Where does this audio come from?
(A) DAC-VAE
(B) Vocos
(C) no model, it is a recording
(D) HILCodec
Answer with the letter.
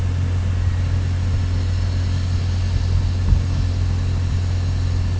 C